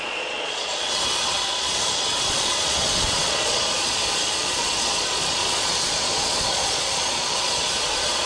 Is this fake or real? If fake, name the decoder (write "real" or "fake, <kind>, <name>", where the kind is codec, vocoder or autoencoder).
fake, vocoder, Vocos